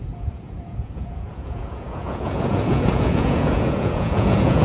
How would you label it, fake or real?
fake